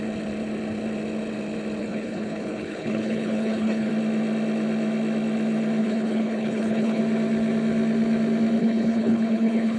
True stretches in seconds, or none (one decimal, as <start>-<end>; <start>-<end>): 0.0-1.8; 3.9-5.8; 7.0-8.6